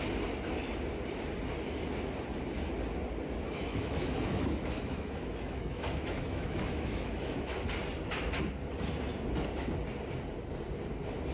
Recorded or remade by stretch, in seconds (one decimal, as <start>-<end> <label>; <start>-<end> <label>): 0.0-3.7 recorded; 3.7-7.7 remade; 7.7-11.3 recorded